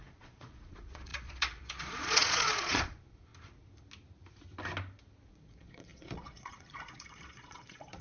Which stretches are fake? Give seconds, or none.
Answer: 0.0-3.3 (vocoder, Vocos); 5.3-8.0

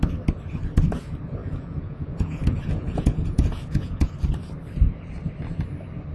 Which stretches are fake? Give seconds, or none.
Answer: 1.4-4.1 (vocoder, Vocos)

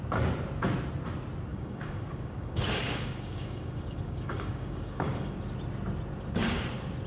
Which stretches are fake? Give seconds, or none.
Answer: 1.5-5.4 (codec, DAC)

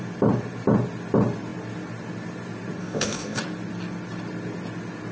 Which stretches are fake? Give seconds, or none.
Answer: 2.8-3.4 (codec, DAC)

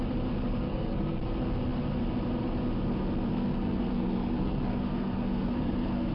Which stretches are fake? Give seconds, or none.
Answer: 0.7-1.2 (codec, SNAC); 3.3-6.1